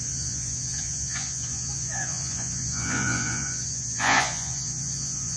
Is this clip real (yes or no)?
no